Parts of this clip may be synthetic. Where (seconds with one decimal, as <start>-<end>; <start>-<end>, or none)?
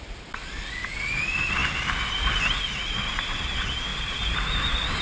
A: 3.9-5.0